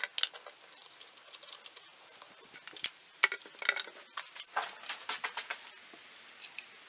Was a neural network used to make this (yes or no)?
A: no